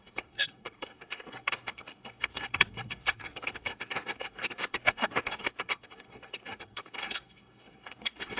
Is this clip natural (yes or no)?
no